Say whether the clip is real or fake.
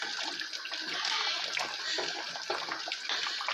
real